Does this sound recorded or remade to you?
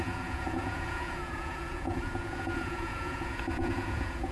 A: remade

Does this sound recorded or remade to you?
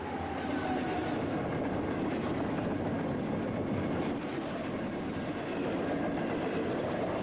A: recorded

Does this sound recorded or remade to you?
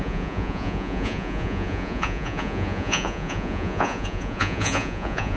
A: remade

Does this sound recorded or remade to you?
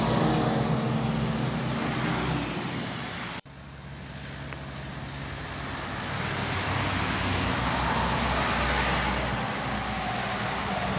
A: recorded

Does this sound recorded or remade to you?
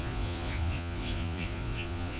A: remade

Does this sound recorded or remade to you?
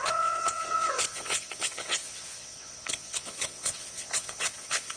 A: remade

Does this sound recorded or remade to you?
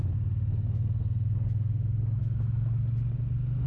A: recorded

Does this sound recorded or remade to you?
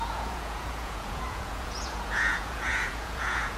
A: remade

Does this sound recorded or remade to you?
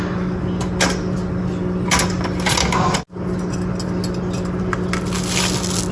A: recorded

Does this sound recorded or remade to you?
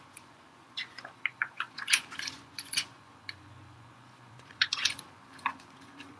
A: remade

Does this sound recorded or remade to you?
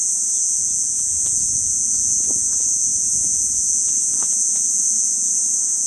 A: remade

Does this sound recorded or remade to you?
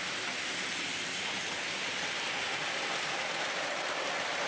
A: recorded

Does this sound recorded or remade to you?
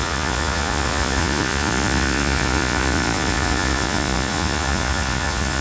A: remade